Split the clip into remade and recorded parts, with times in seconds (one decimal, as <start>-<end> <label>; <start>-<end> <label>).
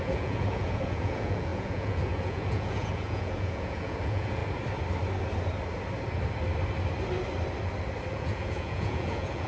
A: 0.0-4.4 remade; 4.4-8.1 recorded; 8.1-9.5 remade